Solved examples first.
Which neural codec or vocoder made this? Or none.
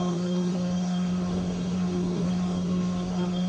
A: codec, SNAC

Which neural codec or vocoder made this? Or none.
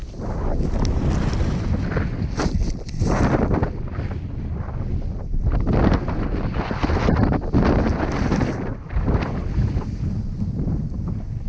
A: none